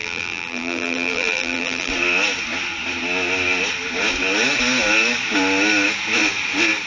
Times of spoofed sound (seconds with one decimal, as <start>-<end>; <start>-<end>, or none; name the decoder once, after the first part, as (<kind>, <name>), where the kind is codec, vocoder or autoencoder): 0.0-1.9 (vocoder, BigVGAN v2)